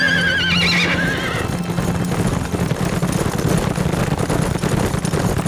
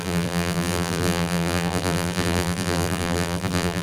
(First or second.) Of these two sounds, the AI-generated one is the second